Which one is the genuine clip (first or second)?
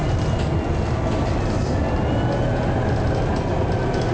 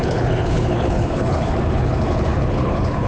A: first